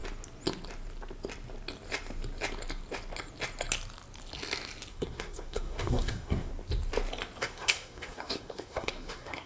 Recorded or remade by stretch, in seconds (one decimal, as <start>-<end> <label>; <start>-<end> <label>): 0.0-4.9 recorded; 4.9-6.5 remade; 6.5-7.4 recorded; 7.4-9.5 remade